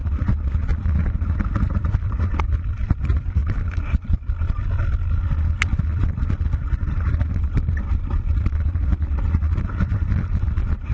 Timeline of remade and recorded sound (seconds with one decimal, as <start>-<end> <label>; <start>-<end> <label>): 0.0-10.9 recorded